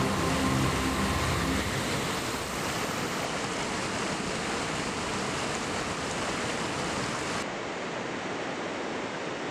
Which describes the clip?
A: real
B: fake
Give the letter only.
A